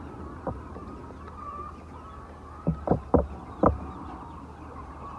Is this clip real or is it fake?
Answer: real